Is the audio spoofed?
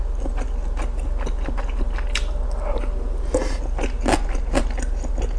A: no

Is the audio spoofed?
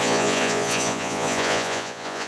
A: yes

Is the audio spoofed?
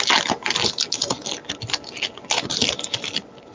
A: no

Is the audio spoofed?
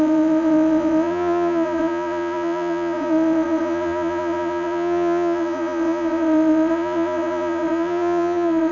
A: yes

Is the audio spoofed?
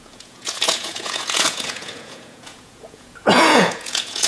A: yes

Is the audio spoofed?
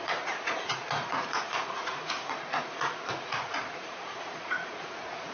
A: yes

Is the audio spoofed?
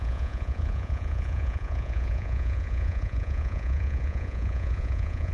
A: yes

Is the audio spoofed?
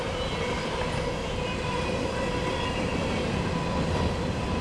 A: no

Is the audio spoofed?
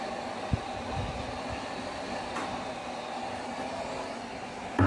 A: no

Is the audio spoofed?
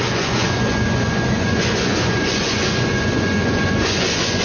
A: yes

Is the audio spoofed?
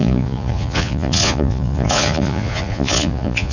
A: yes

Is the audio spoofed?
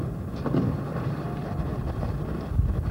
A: no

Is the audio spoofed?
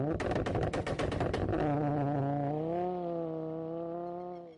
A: no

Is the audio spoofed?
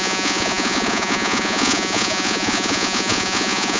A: yes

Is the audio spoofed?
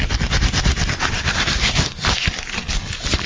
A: no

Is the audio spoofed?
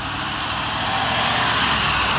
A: no